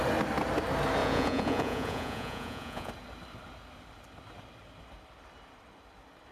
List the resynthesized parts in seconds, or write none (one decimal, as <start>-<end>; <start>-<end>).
1.0-2.9